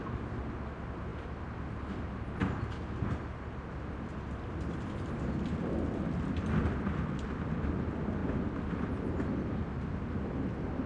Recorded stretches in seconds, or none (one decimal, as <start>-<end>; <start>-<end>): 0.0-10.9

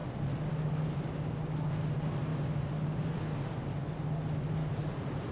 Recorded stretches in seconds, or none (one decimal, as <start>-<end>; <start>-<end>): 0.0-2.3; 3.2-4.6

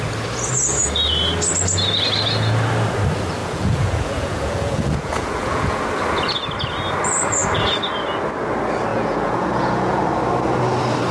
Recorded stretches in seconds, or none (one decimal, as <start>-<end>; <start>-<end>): 0.0-3.4; 5.8-8.9; 10.0-11.1

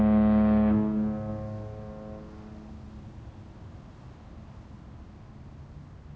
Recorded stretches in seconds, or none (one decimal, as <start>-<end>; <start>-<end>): 0.0-6.2

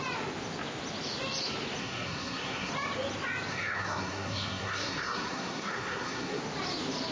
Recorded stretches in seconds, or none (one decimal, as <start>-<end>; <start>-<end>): 0.0-1.8; 2.7-3.5; 6.4-7.1

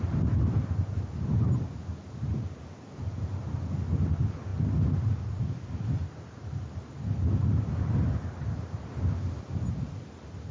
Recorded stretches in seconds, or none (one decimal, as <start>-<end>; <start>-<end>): 0.0-10.5